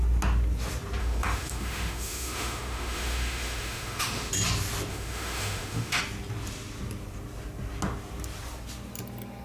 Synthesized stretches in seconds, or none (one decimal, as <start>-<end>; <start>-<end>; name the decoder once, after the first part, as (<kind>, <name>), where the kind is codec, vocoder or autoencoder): 1.0-4.3 (autoencoder, DAC-VAE); 4.9-6.0